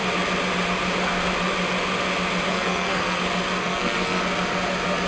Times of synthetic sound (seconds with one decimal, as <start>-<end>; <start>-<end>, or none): 2.5-3.2; 3.6-4.2